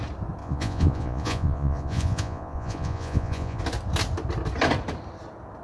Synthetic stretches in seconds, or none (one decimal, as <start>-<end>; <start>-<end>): 0.4-3.6